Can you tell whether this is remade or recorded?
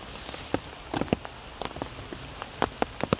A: recorded